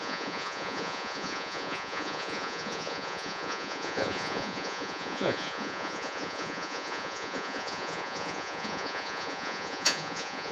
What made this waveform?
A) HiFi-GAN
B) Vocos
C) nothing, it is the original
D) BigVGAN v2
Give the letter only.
B